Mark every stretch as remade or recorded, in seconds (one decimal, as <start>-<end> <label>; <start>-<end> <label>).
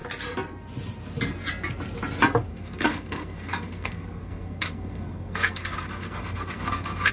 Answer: 0.0-2.5 recorded; 2.5-7.1 remade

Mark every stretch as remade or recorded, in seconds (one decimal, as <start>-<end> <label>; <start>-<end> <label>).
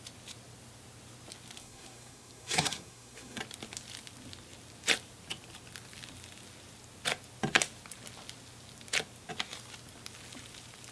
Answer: 0.0-1.6 recorded; 1.6-3.4 remade; 3.4-10.9 recorded